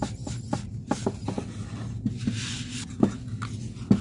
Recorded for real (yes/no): yes